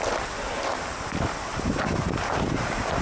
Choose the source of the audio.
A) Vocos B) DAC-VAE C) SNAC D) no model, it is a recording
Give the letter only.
D